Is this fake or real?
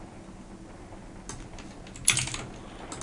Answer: real